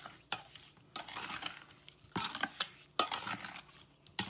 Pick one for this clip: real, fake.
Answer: real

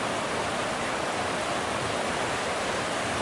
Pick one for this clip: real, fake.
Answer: real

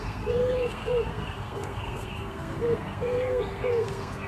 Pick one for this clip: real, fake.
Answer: fake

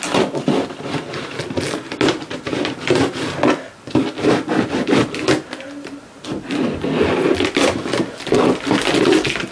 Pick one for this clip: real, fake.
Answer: real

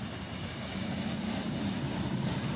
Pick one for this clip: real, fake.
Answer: real